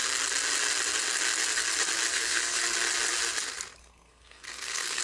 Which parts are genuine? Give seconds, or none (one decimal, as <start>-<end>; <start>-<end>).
0.0-2.1; 2.6-3.8